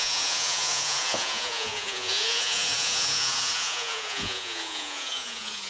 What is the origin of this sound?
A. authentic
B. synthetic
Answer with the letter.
B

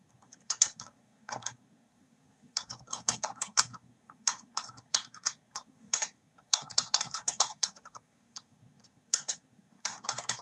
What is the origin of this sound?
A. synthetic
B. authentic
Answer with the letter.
A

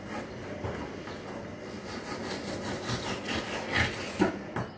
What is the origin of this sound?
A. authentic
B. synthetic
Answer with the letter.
A